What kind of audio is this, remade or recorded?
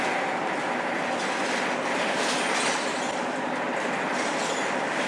recorded